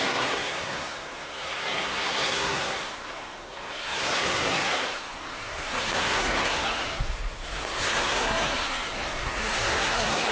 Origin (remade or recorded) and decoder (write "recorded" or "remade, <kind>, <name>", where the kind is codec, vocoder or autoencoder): remade, codec, SNAC